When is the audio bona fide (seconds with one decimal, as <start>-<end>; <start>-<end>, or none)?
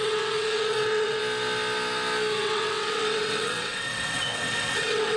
1.2-2.3